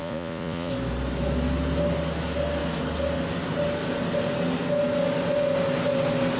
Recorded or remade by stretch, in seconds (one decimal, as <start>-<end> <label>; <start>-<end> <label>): 0.0-0.7 remade; 0.7-6.4 recorded

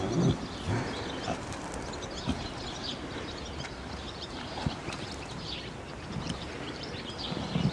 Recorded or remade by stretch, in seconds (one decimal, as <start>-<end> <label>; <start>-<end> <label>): 0.0-2.9 recorded; 2.9-7.0 remade; 7.0-7.7 recorded